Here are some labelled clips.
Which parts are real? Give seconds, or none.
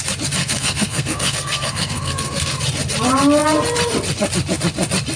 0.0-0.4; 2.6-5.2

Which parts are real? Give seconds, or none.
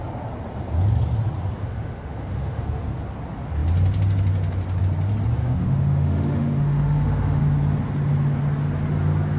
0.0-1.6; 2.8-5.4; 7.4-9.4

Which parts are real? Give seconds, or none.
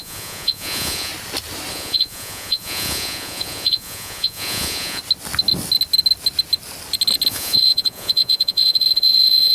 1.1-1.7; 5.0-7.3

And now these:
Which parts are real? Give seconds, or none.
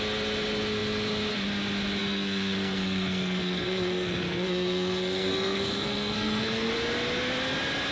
0.0-2.0; 6.7-7.9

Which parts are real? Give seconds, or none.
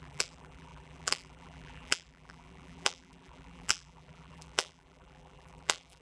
none